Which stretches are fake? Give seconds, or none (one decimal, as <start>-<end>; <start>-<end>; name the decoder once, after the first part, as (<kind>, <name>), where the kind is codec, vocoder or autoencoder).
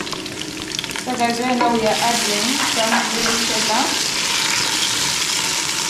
3.2-3.7 (vocoder, BigVGAN v2)